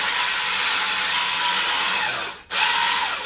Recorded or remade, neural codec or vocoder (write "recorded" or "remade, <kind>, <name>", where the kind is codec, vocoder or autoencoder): recorded